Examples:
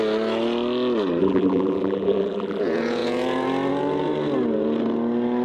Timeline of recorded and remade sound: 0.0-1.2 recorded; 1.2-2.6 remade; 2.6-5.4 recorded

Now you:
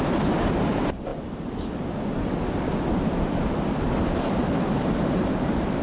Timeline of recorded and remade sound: 0.0-1.1 remade; 1.1-2.9 recorded; 2.9-5.8 remade